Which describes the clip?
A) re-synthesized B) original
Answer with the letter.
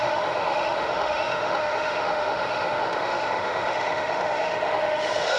A